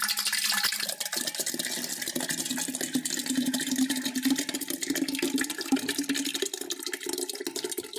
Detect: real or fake real